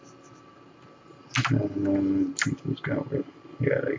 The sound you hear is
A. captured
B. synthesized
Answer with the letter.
A